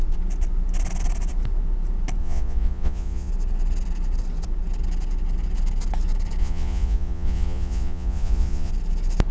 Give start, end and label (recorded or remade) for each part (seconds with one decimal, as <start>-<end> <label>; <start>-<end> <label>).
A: 0.0-2.2 recorded; 2.2-3.3 remade; 3.3-6.4 recorded; 6.4-8.7 remade; 8.7-9.3 recorded